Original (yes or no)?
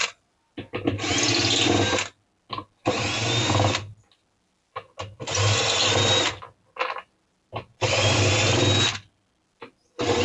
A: yes